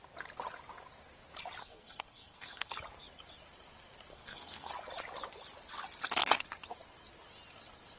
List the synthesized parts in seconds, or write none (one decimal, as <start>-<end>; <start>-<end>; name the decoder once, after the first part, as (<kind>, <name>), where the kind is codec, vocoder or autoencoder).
1.6-2.7 (codec, SNAC); 4.1-4.7